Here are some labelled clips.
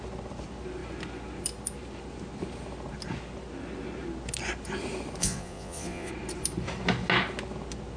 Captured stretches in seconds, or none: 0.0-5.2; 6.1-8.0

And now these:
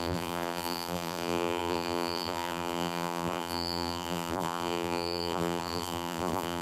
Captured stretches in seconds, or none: none

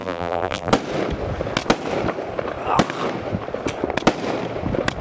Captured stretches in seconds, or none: 0.7-5.0